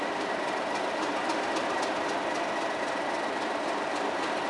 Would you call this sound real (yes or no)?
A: yes